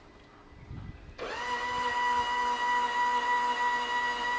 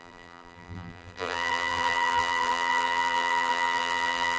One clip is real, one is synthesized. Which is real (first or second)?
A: first